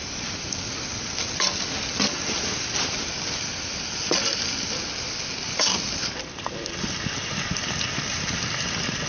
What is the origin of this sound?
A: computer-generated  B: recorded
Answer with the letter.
B